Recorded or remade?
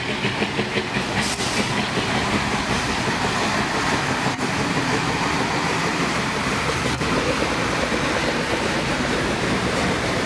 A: remade